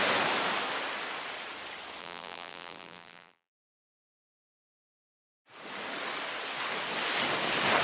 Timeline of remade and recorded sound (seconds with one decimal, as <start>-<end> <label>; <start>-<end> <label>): 0.0-2.0 recorded; 2.0-5.1 remade; 5.1-7.8 recorded